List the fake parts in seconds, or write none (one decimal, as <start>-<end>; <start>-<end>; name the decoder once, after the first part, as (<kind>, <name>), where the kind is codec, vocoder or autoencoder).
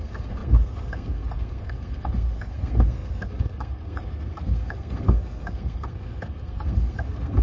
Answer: 0.0-7.4 (codec, SNAC)